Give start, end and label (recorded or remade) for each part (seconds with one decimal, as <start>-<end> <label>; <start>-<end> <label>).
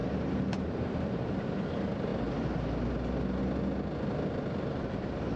0.0-1.5 remade; 1.5-5.4 recorded